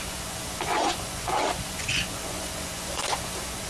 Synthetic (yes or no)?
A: yes